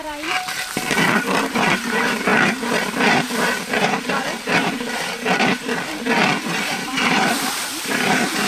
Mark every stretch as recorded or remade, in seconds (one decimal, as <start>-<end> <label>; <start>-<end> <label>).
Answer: 0.0-8.5 remade